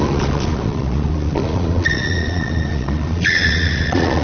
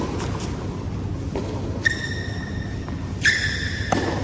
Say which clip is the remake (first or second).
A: first